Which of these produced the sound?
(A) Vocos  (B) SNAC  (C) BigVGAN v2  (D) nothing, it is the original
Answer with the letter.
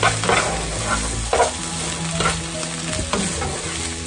D